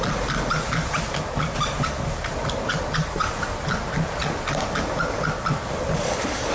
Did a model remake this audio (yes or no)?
no